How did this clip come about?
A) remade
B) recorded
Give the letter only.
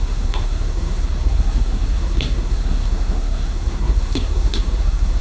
A